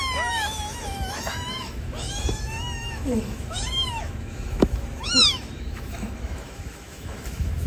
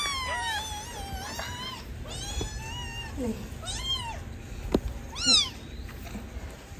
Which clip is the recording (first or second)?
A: second